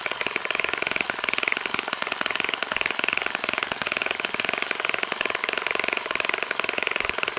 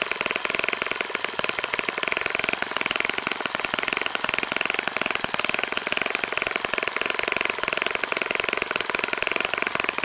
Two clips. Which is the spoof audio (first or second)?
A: first